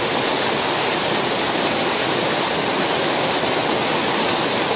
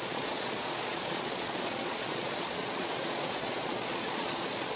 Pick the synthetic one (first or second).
second